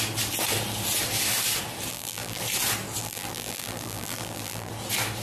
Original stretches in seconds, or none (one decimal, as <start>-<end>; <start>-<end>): 0.0-1.9; 2.4-3.0; 4.7-5.2